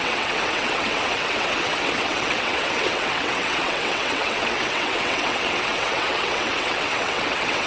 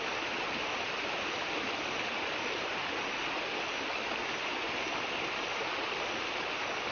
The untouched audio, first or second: second